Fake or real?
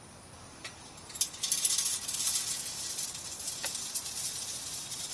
real